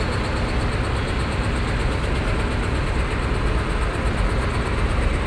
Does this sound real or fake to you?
real